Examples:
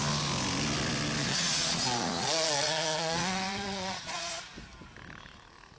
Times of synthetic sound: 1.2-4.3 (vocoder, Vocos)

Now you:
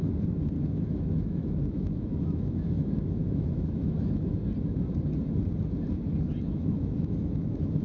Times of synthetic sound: 0.6-4.4 (autoencoder, DAC-VAE); 6.4-7.8